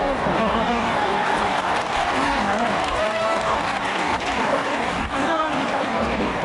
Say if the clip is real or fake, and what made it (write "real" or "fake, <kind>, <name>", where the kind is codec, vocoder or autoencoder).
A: fake, codec, DAC